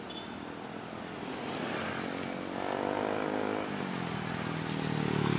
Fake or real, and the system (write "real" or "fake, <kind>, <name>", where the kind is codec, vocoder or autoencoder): real